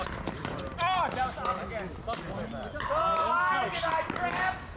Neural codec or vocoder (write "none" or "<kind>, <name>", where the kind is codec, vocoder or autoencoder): none